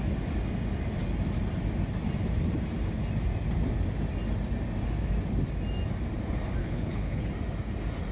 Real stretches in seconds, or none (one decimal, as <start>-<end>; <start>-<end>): 0.0-6.6; 7.3-8.1